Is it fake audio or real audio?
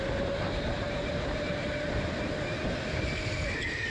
real